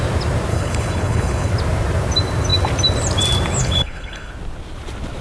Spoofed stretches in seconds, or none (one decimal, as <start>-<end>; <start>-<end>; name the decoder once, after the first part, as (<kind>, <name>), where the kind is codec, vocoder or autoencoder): 0.5-1.5 (codec, HILCodec); 3.6-4.3